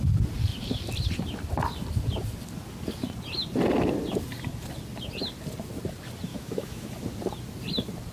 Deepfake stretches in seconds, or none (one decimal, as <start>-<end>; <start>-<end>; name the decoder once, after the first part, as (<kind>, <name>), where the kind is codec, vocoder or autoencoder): 6.3-6.9 (autoencoder, DAC-VAE)